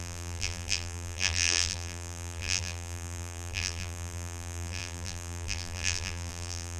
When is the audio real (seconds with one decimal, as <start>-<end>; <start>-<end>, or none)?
none